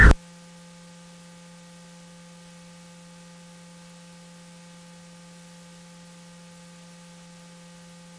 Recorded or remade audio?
recorded